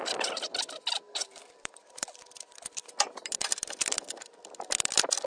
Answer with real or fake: fake